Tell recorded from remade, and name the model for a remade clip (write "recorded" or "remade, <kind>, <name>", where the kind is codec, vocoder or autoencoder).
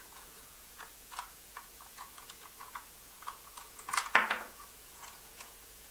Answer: remade, vocoder, Vocos